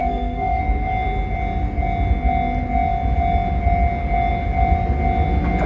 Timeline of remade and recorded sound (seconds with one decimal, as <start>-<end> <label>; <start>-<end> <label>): 0.0-0.6 remade; 0.6-5.7 recorded